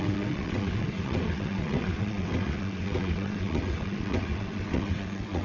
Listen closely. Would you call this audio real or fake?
fake